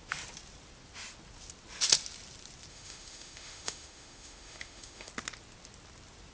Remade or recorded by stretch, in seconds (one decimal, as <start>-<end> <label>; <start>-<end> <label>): 0.0-2.7 recorded; 2.7-5.1 remade; 5.1-6.3 recorded